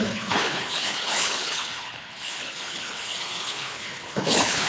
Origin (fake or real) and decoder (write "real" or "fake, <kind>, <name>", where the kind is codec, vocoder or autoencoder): fake, codec, HILCodec